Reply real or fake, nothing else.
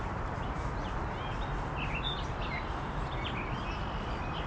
real